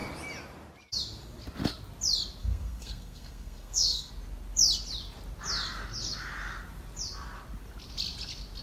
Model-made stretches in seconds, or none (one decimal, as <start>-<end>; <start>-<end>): 2.4-4.1